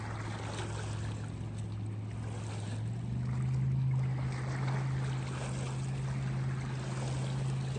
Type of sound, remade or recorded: recorded